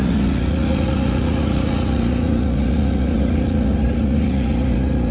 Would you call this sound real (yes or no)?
no